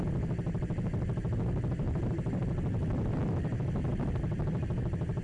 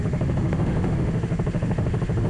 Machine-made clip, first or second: second